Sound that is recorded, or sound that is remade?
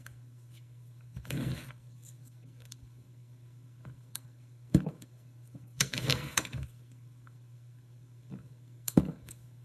remade